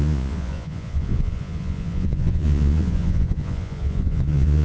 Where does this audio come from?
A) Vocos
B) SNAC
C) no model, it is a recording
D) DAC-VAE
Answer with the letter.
A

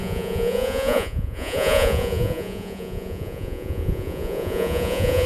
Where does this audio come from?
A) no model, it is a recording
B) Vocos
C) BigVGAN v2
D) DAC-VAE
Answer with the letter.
B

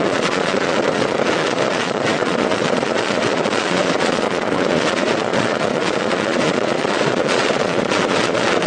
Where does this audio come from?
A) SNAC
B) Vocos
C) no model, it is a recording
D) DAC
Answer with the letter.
B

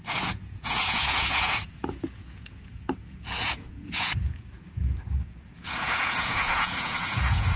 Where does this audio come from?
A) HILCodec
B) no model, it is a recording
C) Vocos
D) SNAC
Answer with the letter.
C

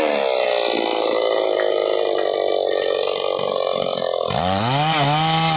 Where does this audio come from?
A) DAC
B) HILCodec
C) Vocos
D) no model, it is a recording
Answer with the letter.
D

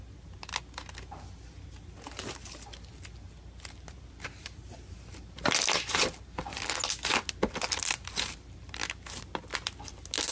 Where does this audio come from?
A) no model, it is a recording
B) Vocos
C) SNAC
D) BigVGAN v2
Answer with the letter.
A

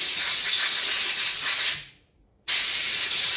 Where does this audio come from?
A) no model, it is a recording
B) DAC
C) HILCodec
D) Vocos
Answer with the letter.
D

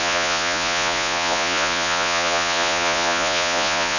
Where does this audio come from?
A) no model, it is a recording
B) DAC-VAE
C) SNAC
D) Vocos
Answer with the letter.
D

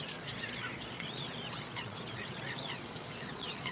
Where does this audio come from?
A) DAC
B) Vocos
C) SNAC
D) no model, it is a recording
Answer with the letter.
B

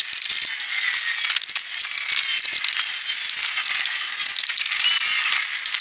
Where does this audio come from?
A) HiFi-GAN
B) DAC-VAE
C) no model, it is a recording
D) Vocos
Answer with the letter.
C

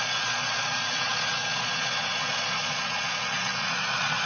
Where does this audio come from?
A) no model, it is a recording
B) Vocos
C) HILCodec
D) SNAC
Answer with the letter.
B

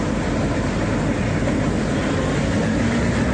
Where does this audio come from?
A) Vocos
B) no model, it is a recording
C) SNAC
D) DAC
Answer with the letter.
B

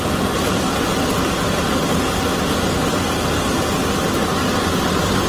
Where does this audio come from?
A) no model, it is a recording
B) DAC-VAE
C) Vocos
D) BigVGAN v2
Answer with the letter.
A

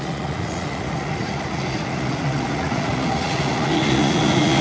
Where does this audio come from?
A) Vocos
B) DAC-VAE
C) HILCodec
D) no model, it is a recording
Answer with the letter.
A